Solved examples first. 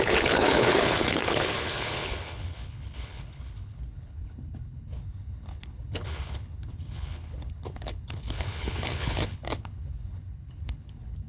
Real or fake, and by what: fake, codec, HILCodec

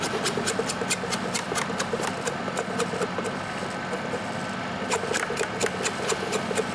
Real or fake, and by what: real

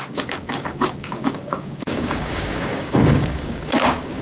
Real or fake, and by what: fake, codec, DAC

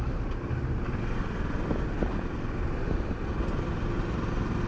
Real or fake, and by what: real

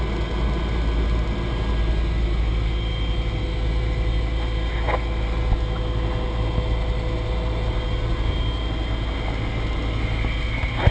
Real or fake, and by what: real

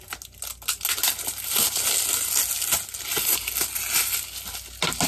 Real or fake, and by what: real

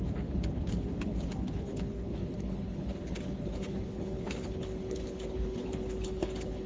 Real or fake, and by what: fake, codec, HILCodec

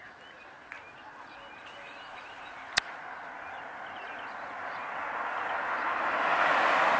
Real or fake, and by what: real